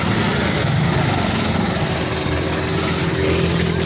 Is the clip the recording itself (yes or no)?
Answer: yes